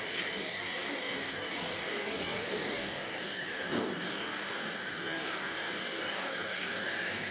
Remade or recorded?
remade